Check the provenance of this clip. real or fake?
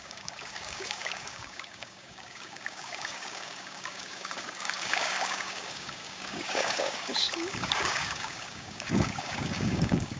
fake